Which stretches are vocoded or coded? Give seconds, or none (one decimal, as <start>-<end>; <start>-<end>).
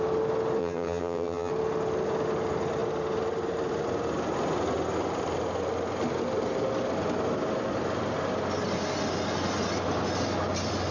0.6-1.5